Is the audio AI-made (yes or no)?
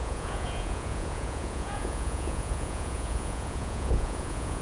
yes